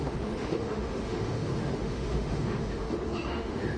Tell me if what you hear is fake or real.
fake